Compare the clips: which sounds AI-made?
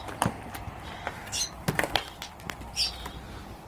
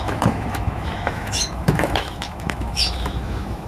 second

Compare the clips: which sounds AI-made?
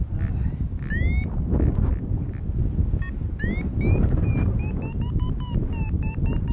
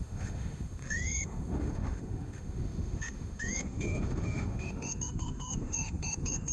second